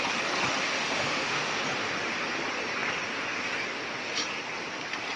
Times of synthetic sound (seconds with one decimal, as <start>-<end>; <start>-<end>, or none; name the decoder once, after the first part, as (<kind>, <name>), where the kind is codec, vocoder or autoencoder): 0.6-1.6 (autoencoder, DAC-VAE)